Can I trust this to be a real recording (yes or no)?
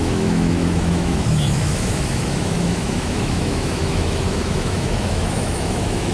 no